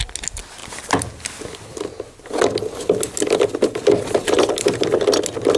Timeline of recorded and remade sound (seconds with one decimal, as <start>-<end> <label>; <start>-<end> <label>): 0.0-5.6 recorded